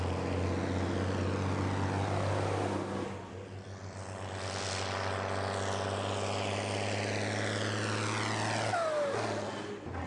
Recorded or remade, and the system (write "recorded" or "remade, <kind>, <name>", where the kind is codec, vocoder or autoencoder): recorded